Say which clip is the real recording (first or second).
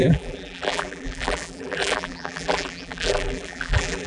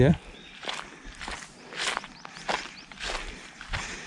second